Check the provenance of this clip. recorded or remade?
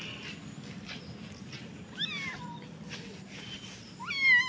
recorded